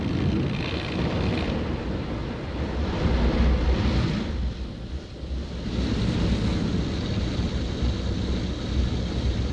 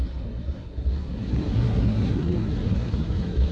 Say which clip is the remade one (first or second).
second